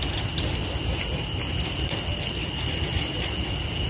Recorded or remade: recorded